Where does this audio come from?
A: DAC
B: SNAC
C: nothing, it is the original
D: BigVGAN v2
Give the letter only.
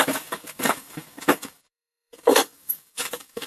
A